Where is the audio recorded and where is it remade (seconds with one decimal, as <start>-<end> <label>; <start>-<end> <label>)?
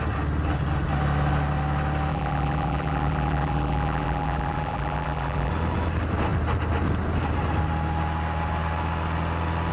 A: 0.0-2.1 recorded; 2.1-5.5 remade; 5.5-9.7 recorded